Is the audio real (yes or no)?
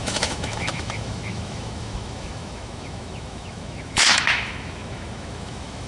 no